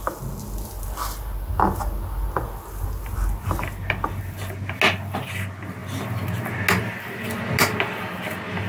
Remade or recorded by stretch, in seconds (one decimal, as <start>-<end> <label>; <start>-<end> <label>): 0.0-8.7 recorded